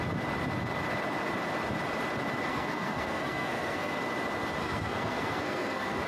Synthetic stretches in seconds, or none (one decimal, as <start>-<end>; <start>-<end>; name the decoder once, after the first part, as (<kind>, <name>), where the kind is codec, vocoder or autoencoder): 2.5-4.0 (codec, SNAC); 4.6-6.1